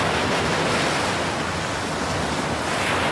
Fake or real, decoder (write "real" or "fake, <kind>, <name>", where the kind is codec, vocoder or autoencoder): real